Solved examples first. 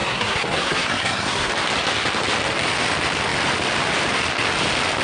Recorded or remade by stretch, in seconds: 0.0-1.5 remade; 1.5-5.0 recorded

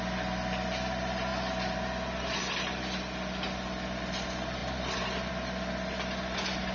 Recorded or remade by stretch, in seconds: 0.0-6.7 recorded